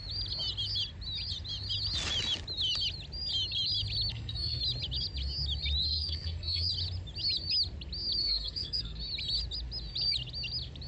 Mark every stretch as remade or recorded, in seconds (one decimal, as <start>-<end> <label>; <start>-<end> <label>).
0.0-4.1 recorded; 4.1-4.6 remade; 4.6-5.9 recorded; 5.9-6.7 remade; 6.7-8.2 recorded; 8.2-9.0 remade; 9.0-10.9 recorded